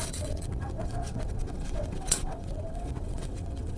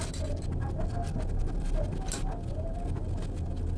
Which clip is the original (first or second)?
second